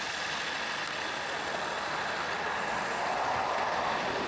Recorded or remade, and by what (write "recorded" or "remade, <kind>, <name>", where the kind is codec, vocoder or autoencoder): recorded